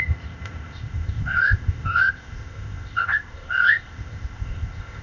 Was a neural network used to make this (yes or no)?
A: yes